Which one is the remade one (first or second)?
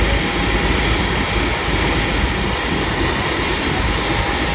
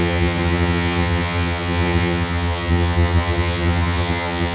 second